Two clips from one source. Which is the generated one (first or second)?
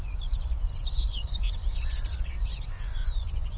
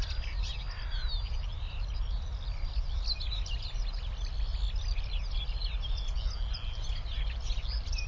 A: first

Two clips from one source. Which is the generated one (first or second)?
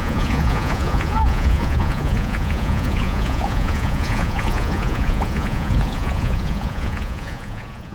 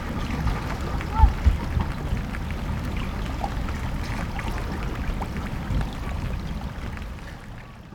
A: first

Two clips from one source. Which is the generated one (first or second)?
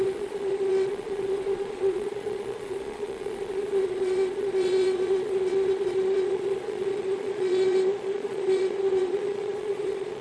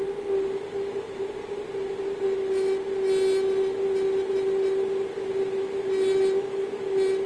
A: first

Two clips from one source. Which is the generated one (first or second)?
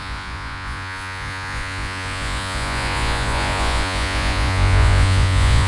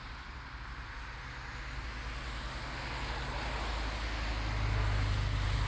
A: first